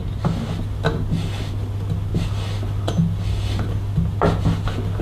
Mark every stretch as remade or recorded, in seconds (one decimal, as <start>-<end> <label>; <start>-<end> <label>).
0.0-5.0 recorded